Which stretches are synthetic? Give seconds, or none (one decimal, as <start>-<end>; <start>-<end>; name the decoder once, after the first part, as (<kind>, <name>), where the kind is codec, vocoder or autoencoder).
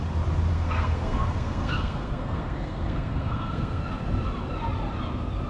0.5-3.8 (codec, SNAC)